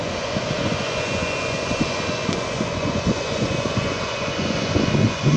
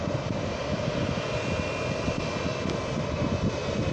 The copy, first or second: first